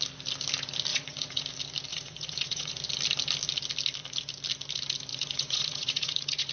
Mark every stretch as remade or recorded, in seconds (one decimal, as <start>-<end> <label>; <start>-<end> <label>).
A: 0.0-0.9 recorded; 0.9-1.5 remade; 1.5-1.9 recorded; 1.9-2.8 remade; 2.8-5.1 recorded; 5.1-6.5 remade